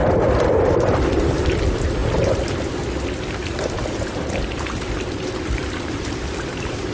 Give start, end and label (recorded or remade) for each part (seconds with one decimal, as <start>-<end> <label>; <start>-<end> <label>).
0.0-6.9 remade